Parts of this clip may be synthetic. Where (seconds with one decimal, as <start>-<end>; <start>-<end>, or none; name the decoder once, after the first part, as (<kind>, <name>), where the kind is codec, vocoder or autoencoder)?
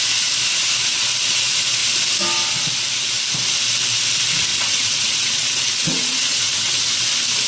0.9-1.4 (vocoder, WaveNeXt); 4.5-7.0